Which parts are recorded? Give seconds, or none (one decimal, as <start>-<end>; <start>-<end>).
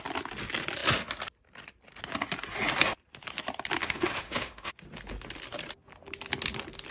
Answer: 0.0-3.8; 4.7-6.9